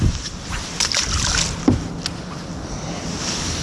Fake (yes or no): no